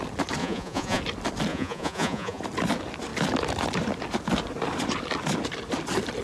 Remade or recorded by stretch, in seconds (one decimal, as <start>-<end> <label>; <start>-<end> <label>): 0.0-0.4 recorded; 0.4-1.0 remade; 1.0-1.5 recorded; 1.5-2.4 remade; 2.4-6.2 recorded